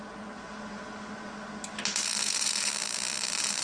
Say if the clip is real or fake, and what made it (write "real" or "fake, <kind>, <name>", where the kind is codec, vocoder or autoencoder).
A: real